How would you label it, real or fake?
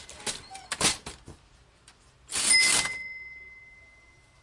real